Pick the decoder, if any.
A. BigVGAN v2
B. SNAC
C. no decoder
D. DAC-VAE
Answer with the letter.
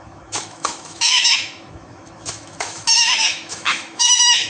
D